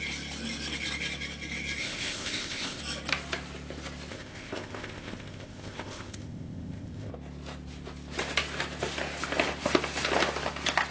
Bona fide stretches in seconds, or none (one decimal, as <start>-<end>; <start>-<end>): 0.0-1.8; 2.8-4.1; 7.1-10.9